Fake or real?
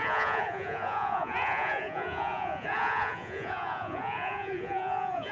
fake